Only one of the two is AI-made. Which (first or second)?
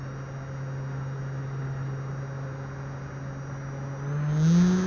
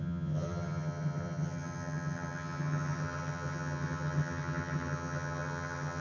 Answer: second